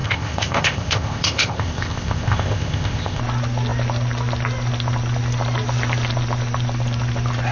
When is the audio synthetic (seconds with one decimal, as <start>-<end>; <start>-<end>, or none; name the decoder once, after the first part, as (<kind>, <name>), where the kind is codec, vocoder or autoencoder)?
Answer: 0.0-3.2 (codec, ZipCodec)